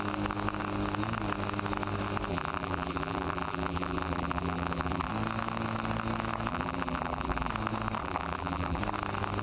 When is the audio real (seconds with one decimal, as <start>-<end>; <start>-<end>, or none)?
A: 0.0-2.3; 5.1-6.5; 7.5-8.0; 8.8-9.4